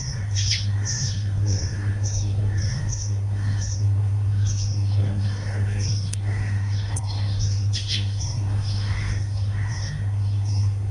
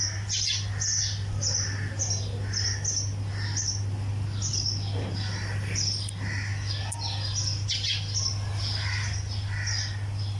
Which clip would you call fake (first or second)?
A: first